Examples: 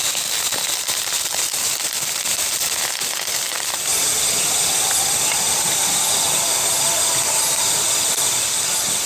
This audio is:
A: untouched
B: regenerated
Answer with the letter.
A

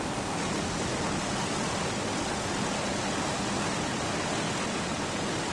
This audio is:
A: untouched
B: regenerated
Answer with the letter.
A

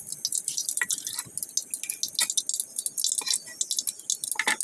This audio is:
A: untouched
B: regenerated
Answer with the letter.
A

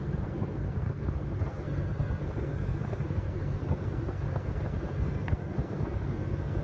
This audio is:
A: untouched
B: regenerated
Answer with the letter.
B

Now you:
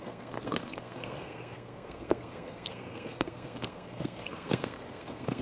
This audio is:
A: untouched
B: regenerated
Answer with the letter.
B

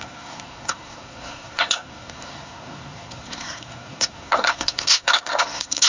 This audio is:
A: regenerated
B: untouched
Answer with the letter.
A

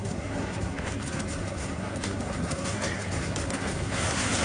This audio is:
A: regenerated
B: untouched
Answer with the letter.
A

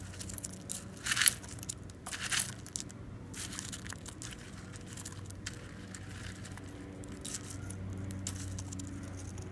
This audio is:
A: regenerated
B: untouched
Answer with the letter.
B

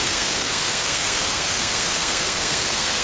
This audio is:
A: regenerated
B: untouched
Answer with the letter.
A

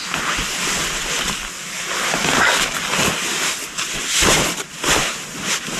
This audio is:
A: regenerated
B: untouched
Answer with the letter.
B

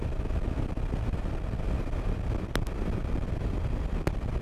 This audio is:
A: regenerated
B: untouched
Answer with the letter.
B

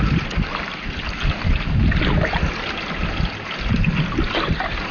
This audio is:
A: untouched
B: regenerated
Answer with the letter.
A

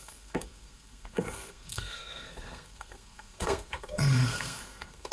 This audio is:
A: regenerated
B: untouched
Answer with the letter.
A